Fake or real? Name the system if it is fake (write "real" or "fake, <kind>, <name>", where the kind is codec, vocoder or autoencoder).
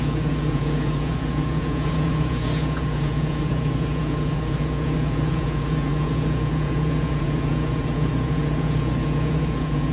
fake, vocoder, Vocos